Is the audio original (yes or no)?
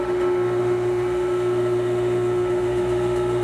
no